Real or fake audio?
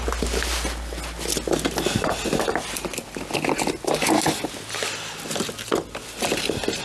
real